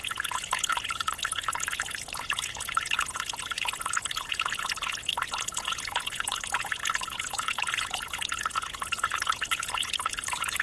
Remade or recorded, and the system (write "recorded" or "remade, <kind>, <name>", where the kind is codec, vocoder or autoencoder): remade, vocoder, Vocos